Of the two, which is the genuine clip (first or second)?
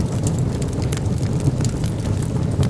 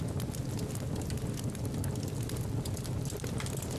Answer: second